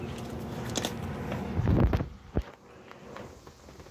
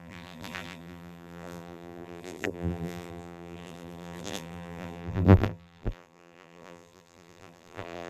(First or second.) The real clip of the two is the first